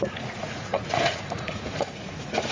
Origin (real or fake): fake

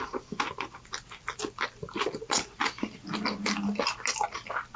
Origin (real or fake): real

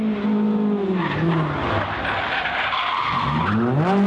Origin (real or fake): real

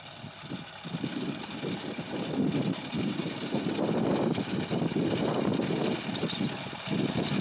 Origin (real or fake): real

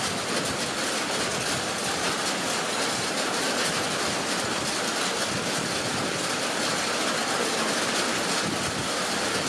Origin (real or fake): real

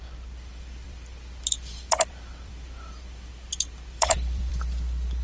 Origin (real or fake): fake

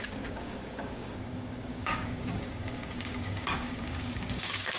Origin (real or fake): fake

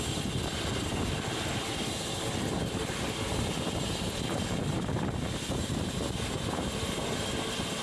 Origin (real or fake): real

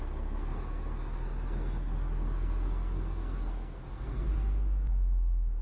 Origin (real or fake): fake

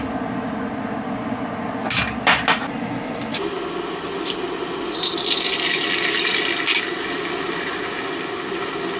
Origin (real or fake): real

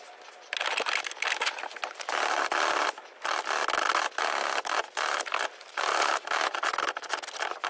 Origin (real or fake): real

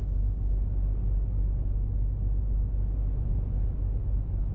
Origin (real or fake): real